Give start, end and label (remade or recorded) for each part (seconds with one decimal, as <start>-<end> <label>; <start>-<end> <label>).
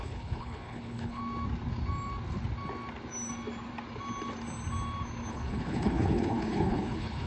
0.0-1.2 remade; 1.2-5.3 recorded; 5.3-7.3 remade